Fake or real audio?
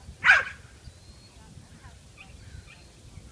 real